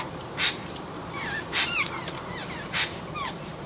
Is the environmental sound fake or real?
fake